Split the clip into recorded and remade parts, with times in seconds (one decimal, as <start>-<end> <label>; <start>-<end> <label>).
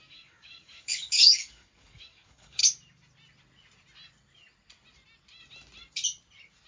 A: 0.0-2.6 remade; 2.6-6.7 recorded